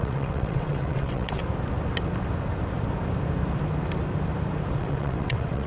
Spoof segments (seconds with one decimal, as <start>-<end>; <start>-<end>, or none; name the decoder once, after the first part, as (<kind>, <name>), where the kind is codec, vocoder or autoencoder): 0.0-1.4 (vocoder, WaveNeXt); 4.8-5.7